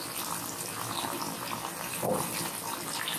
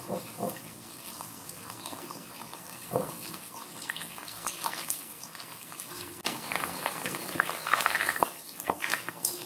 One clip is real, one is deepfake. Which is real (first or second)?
first